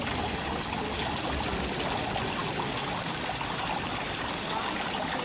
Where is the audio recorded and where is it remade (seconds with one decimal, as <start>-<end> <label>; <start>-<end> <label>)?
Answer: 0.0-5.2 recorded